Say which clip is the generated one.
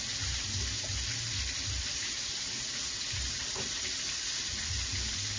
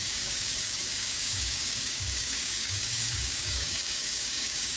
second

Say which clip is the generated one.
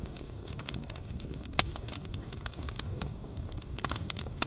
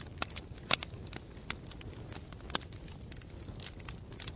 first